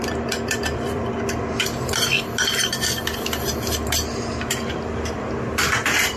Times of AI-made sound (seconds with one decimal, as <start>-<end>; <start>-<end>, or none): 0.0-1.0; 4.7-6.2